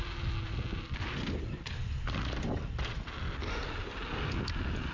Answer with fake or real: real